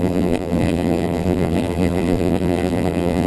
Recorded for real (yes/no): no